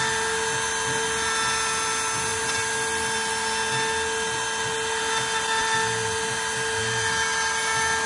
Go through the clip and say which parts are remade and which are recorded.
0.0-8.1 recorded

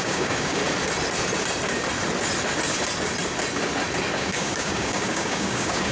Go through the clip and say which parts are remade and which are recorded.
0.0-0.6 remade; 0.6-4.1 recorded; 4.1-5.9 remade

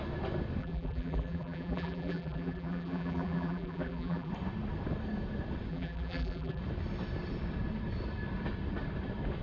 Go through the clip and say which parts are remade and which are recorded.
0.0-0.6 recorded; 0.6-4.3 remade; 4.3-5.7 recorded; 5.7-6.6 remade; 6.6-9.4 recorded

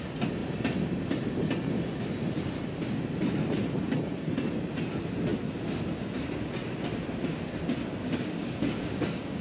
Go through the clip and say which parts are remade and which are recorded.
0.0-8.0 recorded; 8.0-9.4 remade

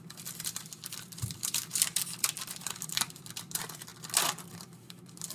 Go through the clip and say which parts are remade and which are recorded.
0.0-3.9 remade; 3.9-4.4 recorded; 4.4-5.3 remade

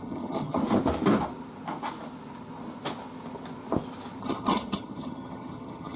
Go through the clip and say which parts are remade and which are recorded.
0.0-0.6 remade; 0.6-4.2 recorded; 4.2-6.0 remade

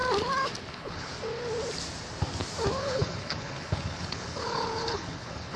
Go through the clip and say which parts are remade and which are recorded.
0.0-0.7 recorded; 0.7-1.1 remade; 1.1-2.8 recorded; 2.8-5.6 remade